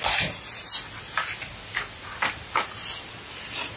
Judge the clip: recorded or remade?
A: recorded